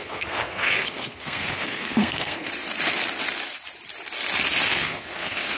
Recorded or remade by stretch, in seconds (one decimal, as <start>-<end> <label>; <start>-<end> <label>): 0.0-2.5 remade; 2.5-4.7 recorded; 4.7-5.6 remade